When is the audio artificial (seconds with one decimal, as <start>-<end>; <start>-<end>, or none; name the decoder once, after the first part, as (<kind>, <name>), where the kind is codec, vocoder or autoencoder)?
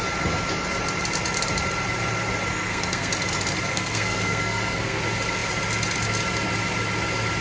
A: 2.5-3.1 (codec, SNAC); 3.7-5.0